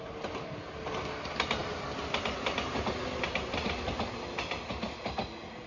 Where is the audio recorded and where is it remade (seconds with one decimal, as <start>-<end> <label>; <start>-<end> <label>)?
0.0-5.7 recorded